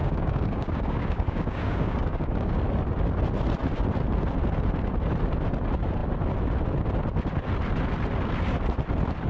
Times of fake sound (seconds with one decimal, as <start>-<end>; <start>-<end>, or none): 0.0-2.6